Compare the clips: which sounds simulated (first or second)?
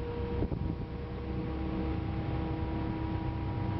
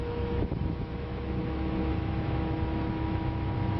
second